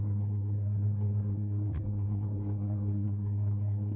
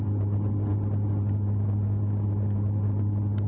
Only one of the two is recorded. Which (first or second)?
second